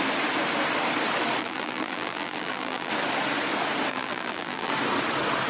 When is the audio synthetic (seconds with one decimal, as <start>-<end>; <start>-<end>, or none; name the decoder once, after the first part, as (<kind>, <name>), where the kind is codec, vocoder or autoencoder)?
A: 1.4-2.9 (vocoder, BigVGAN v2); 3.9-4.7